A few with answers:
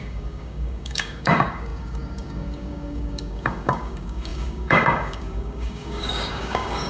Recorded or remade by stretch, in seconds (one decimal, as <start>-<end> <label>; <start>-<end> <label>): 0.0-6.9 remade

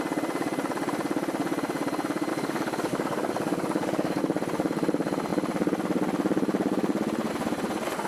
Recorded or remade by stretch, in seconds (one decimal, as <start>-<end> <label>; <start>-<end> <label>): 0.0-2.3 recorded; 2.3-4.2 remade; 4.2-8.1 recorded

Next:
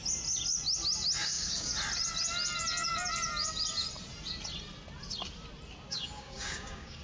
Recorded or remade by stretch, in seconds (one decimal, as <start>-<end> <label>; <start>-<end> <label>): 0.0-1.2 recorded; 1.2-1.7 remade; 1.7-5.9 recorded; 5.9-7.0 remade

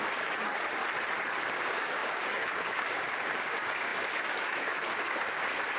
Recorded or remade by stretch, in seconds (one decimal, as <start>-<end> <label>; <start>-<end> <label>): 0.0-0.8 remade; 0.8-1.4 recorded; 1.4-5.8 remade